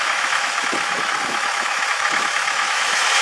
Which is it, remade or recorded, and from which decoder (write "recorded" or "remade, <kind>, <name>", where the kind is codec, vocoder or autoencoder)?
remade, autoencoder, DAC-VAE